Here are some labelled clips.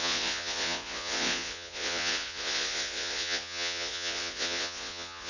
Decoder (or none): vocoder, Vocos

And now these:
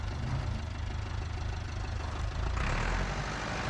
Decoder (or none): none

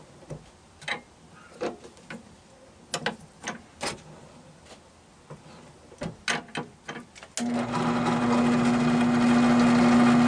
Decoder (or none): none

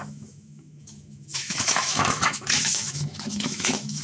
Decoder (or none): autoencoder, DAC-VAE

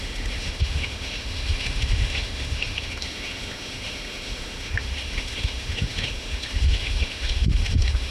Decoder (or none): autoencoder, DAC-VAE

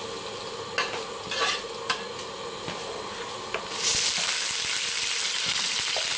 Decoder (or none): none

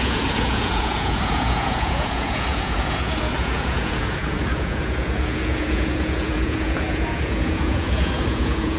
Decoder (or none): vocoder, Vocos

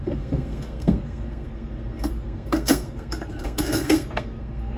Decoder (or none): codec, SNAC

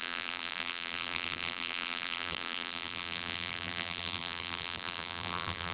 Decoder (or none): vocoder, BigVGAN v2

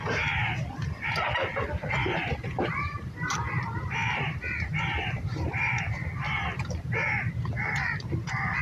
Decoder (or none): vocoder, BigVGAN v2